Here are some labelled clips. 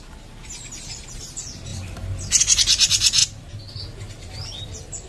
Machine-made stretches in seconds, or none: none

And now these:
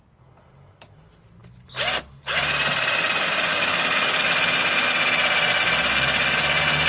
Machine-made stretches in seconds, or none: 3.5-4.2

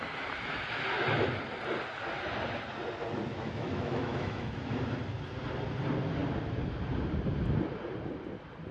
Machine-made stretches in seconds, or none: 3.3-4.6

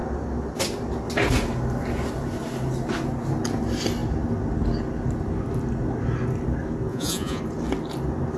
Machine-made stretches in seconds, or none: 6.9-7.4

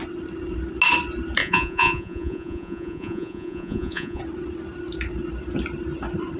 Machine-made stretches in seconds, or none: 1.4-4.2

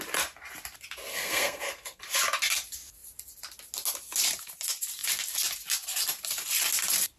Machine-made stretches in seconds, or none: 1.1-2.0